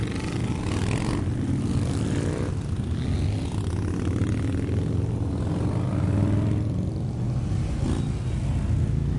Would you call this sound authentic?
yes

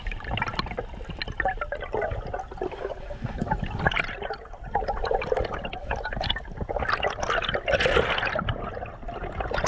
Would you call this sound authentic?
yes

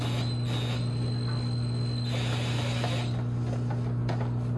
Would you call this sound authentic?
yes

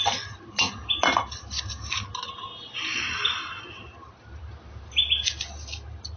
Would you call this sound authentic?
yes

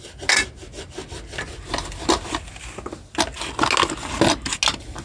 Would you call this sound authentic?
yes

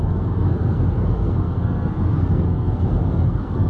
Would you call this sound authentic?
no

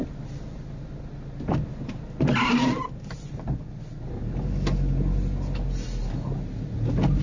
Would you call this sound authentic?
yes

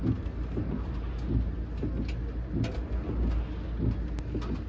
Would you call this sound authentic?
yes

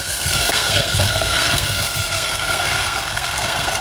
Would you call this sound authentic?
no